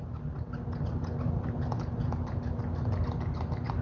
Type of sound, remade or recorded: recorded